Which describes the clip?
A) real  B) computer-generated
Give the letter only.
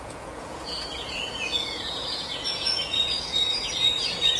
B